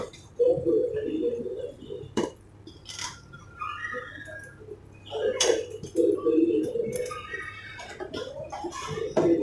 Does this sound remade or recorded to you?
remade